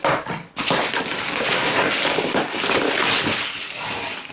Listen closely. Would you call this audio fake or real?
real